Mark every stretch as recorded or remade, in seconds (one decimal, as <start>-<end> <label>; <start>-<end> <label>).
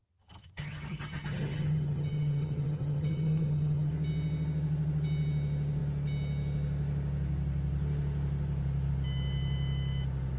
0.0-3.9 remade; 3.9-10.4 recorded